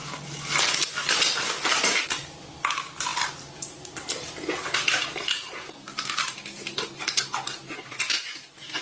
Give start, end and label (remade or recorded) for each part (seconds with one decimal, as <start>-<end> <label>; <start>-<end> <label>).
0.0-8.8 recorded